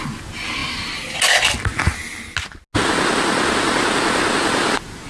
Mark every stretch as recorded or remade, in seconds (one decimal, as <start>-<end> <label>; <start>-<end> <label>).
0.0-5.1 recorded

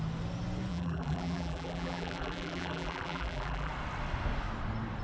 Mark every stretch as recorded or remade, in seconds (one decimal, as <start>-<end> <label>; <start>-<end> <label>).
0.0-0.7 recorded; 0.7-3.7 remade; 3.7-5.0 recorded

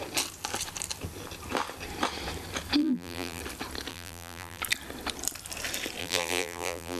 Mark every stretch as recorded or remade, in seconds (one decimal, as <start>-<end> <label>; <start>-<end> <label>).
0.0-2.8 recorded; 2.8-3.4 remade; 3.4-3.9 recorded; 3.9-4.6 remade; 4.6-6.0 recorded; 6.0-7.0 remade

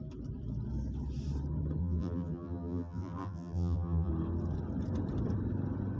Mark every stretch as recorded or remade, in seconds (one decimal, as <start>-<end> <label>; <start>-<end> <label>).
0.0-1.8 recorded; 1.8-4.1 remade; 4.1-6.0 recorded

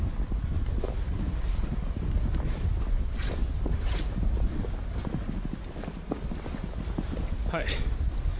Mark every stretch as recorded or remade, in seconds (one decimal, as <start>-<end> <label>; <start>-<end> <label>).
0.0-8.4 recorded

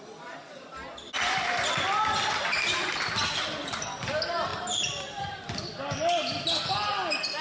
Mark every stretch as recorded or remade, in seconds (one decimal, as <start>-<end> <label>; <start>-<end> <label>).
0.0-7.4 recorded